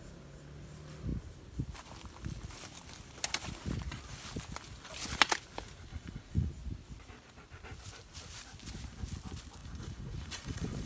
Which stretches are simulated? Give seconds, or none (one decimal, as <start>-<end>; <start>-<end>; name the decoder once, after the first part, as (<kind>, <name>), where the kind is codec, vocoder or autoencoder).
5.9-6.5 (vocoder, Vocos); 9.6-10.9